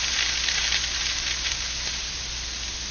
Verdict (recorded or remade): recorded